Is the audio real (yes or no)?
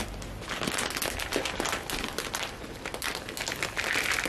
no